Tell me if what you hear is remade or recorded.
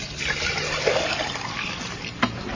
recorded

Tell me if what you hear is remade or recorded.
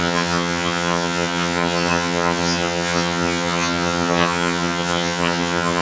remade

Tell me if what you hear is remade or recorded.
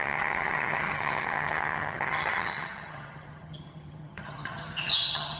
remade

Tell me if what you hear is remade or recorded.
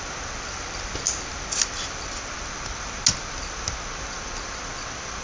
recorded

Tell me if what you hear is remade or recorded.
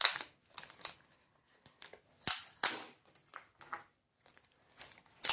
recorded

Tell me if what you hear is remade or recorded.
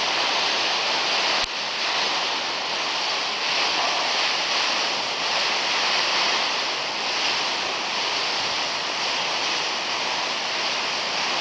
recorded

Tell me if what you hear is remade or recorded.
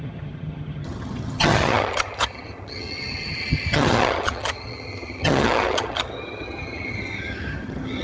remade